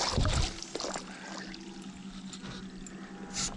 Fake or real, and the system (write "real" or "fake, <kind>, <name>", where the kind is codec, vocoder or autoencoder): real